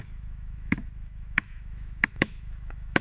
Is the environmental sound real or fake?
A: fake